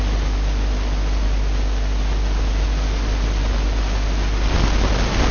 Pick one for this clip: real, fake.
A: real